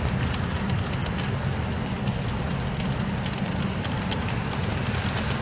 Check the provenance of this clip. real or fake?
real